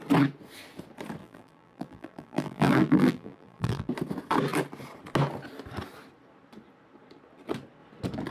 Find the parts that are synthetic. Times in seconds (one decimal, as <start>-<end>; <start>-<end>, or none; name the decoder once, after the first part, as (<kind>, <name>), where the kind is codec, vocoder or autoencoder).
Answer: 1.2-3.9 (vocoder, BigVGAN v2)